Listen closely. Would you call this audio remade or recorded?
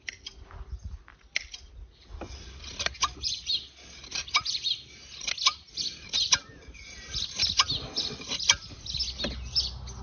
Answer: recorded